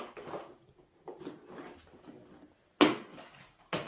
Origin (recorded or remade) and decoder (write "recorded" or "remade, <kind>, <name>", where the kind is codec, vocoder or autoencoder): recorded